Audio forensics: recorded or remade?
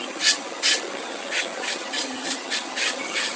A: remade